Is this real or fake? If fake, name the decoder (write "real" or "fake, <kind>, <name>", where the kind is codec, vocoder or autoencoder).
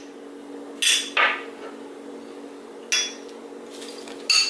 real